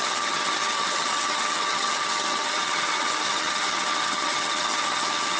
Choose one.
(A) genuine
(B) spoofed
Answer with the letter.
B